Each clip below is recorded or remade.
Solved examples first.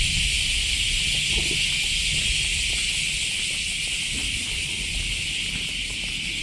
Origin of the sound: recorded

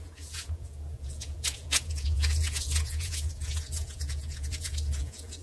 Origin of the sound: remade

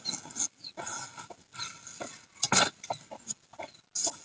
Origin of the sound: recorded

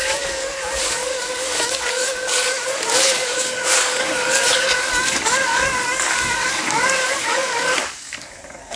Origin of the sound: remade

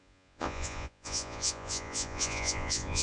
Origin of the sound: remade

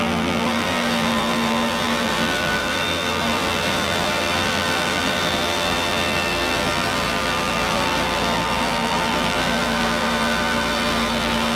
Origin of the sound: remade